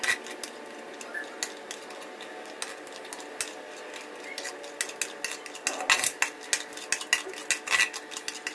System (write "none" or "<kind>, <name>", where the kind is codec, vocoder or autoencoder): none